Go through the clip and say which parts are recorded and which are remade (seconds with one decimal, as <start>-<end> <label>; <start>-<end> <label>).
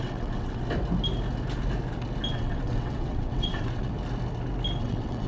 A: 0.0-0.6 remade; 0.6-2.3 recorded; 2.3-3.9 remade; 3.9-4.8 recorded; 4.8-5.3 remade